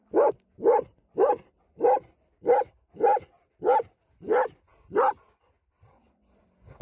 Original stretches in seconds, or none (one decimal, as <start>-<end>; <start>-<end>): 0.0-6.8